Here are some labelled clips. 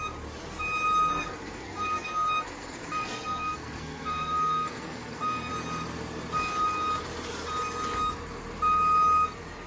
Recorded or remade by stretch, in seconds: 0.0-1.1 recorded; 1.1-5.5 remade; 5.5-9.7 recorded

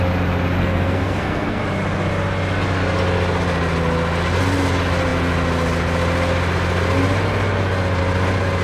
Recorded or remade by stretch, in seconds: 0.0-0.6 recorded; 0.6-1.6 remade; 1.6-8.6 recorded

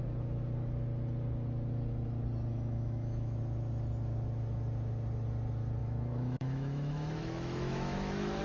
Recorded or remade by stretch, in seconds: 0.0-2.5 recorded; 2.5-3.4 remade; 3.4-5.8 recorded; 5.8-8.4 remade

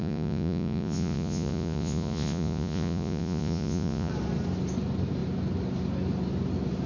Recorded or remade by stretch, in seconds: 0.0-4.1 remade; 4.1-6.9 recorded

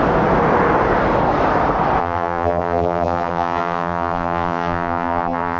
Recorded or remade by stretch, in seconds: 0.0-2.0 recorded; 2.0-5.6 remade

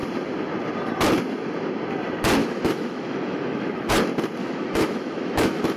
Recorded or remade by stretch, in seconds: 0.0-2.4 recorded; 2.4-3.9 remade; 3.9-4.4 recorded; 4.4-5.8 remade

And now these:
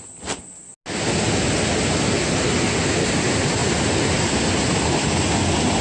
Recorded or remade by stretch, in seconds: 0.0-5.8 recorded